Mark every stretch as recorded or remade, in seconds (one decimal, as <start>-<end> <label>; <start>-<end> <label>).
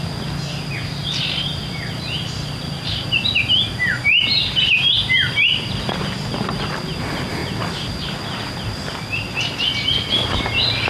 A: 0.0-10.9 recorded